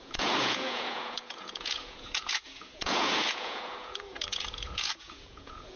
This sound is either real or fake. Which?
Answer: fake